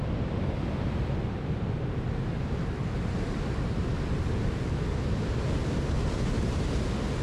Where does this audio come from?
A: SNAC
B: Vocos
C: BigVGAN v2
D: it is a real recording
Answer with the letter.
D